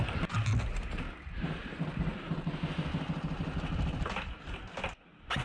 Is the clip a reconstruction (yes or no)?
no